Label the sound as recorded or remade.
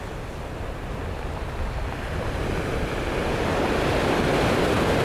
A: recorded